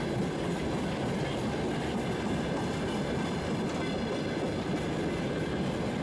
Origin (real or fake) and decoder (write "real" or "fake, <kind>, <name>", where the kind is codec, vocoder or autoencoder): real